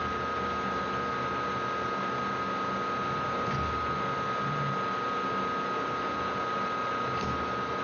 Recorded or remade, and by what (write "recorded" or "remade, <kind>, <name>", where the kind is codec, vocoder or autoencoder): recorded